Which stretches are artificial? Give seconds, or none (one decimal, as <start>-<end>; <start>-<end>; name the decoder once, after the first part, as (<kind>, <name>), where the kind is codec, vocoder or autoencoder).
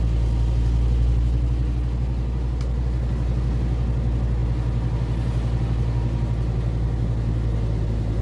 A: none